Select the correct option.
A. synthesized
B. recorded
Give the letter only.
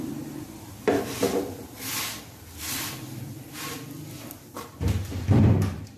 A